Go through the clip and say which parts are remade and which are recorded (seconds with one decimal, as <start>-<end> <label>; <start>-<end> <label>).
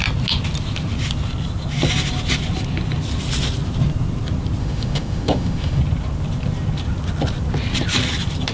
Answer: 0.0-4.6 recorded; 4.6-5.8 remade; 5.8-8.5 recorded